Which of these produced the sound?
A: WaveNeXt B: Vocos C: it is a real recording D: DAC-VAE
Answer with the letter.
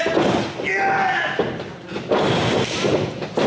C